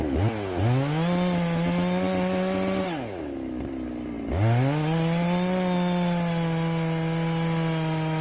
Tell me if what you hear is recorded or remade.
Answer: recorded